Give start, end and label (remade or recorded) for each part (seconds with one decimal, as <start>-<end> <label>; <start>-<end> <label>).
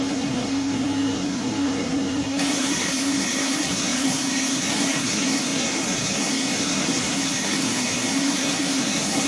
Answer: 0.0-9.3 remade